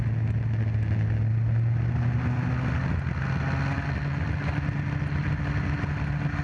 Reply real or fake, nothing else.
real